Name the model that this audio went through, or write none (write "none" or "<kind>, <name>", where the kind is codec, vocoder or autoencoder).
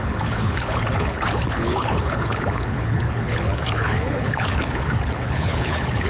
codec, HILCodec